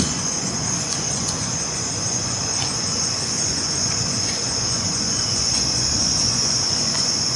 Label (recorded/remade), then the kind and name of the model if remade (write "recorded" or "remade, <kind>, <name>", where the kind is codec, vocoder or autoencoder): remade, vocoder, Vocos